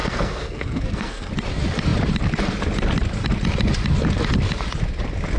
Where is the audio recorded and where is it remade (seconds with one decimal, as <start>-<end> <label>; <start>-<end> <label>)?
0.0-1.3 remade; 1.3-5.4 recorded